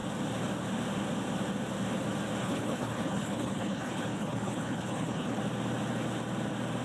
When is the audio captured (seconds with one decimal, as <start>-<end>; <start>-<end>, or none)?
0.0-2.4; 5.4-6.8